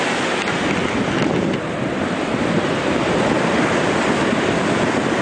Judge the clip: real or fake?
real